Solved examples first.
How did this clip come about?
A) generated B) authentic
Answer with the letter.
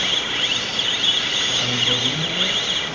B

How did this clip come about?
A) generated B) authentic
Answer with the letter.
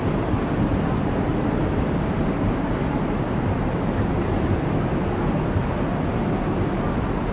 B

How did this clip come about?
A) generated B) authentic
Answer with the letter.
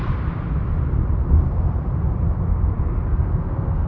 B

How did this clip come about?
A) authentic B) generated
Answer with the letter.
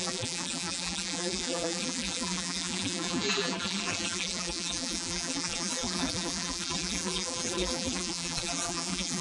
B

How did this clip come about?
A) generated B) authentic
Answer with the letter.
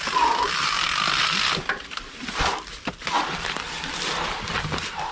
A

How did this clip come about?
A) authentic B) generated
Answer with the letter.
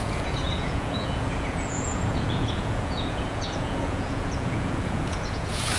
B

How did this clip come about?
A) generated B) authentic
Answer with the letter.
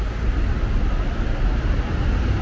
B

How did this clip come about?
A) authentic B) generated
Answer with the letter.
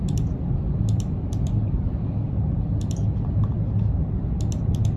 A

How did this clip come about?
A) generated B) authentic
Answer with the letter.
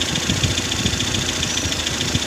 A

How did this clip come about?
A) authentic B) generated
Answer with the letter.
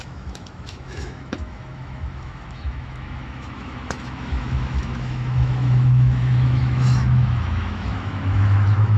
B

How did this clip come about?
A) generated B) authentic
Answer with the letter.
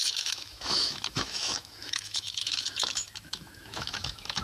A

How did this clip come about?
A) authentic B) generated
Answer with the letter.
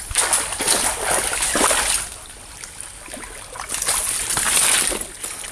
A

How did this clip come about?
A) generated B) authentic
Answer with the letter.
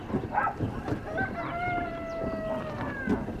B